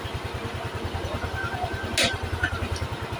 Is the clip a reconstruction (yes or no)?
no